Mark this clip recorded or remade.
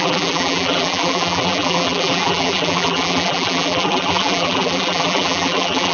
remade